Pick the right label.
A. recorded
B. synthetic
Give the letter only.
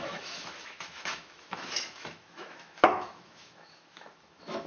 B